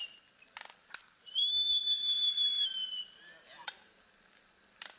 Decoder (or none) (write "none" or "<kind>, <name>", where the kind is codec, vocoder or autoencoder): none